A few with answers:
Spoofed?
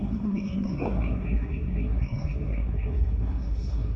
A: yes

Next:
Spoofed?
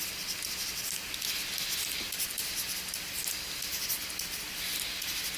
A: no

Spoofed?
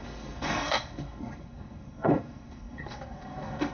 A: yes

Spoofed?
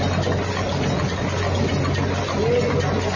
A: no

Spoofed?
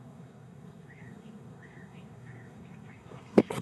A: yes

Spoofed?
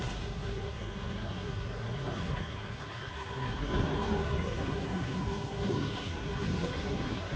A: yes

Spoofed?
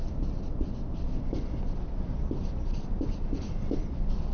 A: no